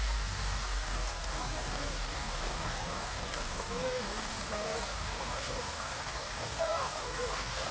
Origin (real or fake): fake